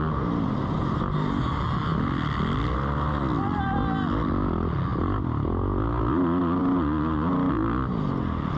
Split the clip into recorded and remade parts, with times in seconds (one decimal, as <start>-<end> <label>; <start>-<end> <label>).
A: 0.0-8.6 recorded